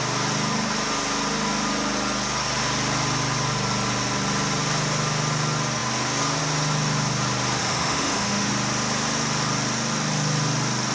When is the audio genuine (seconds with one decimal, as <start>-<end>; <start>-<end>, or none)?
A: 0.0-7.6; 8.5-10.9